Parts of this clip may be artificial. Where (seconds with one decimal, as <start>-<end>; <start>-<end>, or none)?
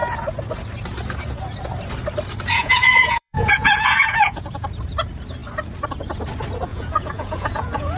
2.6-4.7; 6.7-8.0